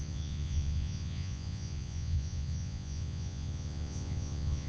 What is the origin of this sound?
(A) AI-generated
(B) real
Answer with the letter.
A